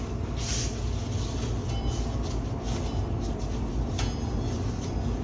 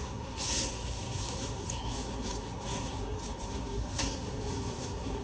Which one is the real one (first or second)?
first